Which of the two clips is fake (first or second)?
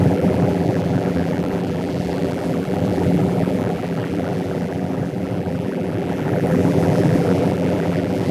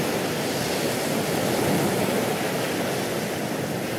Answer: first